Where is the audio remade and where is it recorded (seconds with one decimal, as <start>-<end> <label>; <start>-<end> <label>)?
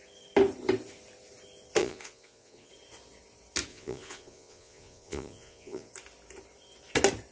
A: 0.0-1.8 recorded; 1.8-2.7 remade; 2.7-3.7 recorded; 3.7-5.9 remade; 5.9-7.3 recorded